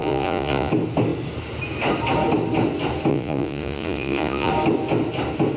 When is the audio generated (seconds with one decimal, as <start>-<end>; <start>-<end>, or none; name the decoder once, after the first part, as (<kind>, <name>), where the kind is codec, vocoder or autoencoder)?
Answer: 0.0-0.7 (vocoder, Vocos); 3.1-4.5